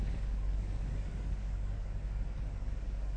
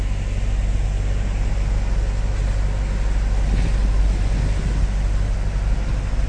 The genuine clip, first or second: second